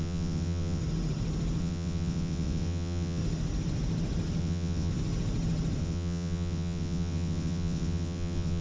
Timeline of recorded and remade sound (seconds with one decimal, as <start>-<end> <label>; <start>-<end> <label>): 0.0-0.8 remade; 0.8-1.6 recorded; 1.6-3.2 remade; 3.2-4.4 recorded; 4.4-4.9 remade; 4.9-5.8 recorded; 5.8-8.6 remade